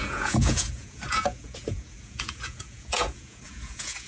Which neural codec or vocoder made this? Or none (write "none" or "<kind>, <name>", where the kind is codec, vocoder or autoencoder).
vocoder, Vocos